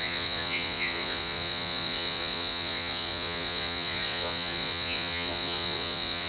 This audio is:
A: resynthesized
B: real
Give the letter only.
A